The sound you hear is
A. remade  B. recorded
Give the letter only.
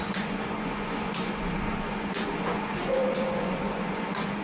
A